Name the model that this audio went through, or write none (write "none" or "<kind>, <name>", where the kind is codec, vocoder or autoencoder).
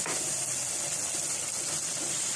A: none